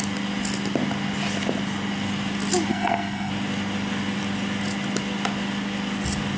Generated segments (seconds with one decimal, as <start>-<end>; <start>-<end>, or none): 2.7-3.3